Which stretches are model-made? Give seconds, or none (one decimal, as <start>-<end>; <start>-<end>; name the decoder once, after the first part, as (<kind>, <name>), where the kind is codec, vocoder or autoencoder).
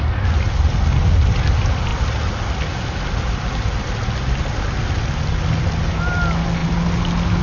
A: none